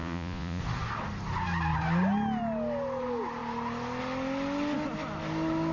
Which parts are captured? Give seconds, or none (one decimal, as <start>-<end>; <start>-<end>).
0.6-5.7